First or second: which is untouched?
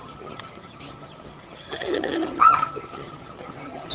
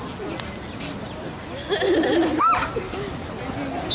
second